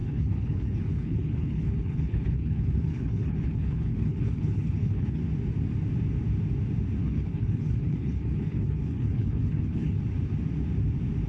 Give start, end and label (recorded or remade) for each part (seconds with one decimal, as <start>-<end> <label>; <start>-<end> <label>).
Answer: 0.0-5.2 remade; 5.2-7.0 recorded; 7.0-10.0 remade; 10.0-11.3 recorded